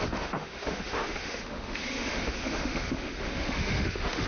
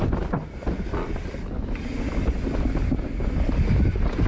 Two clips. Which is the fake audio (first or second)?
first